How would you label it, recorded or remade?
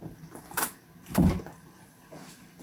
recorded